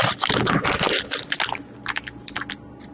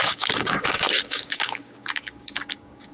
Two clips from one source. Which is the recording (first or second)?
first